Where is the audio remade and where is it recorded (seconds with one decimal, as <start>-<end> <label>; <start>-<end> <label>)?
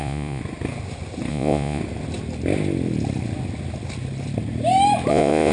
0.0-0.4 remade; 0.4-1.3 recorded; 1.3-1.8 remade; 1.8-5.1 recorded; 5.1-5.5 remade